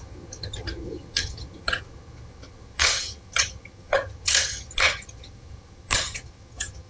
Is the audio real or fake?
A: fake